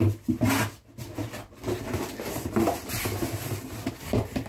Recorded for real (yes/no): yes